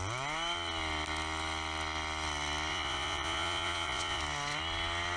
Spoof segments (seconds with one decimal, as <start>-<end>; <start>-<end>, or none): 2.7-4.2